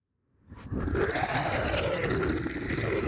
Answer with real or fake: real